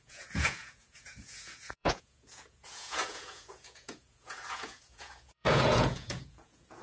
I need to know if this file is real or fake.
fake